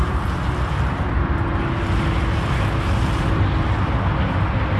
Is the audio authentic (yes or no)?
yes